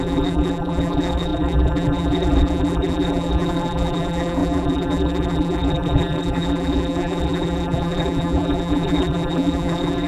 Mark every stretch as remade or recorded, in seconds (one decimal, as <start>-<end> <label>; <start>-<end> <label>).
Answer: 0.0-10.1 remade